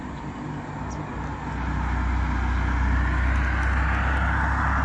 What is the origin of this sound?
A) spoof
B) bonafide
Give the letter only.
B